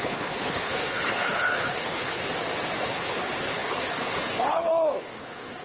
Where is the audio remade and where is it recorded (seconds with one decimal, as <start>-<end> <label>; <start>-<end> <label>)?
0.0-2.3 remade; 2.3-2.8 recorded; 2.8-5.6 remade